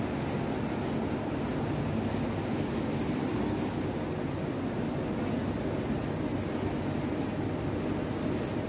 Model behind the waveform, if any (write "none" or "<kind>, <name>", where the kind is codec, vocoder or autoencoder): none